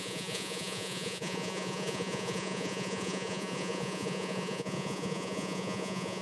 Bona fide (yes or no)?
no